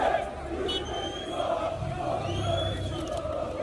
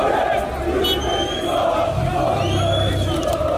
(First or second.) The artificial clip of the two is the first